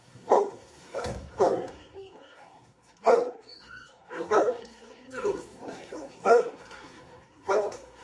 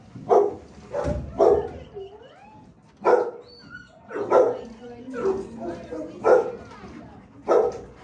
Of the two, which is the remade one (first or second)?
first